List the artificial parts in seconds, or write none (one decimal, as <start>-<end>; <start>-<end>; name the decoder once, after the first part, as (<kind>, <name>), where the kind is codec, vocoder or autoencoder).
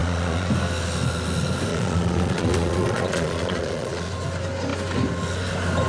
0.0-0.5 (vocoder, Vocos); 1.7-4.1